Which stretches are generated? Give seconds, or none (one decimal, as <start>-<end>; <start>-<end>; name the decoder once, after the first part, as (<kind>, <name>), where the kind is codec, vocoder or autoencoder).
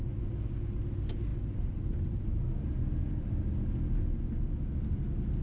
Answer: none